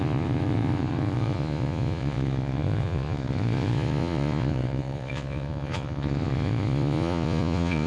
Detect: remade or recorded remade